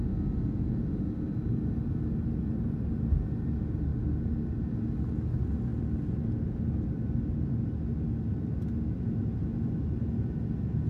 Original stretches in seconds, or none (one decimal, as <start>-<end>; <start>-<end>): 0.0-10.9